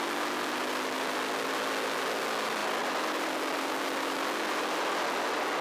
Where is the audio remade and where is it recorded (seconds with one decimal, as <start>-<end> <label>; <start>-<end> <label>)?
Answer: 0.0-5.6 recorded